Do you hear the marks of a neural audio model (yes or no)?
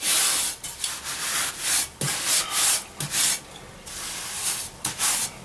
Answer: no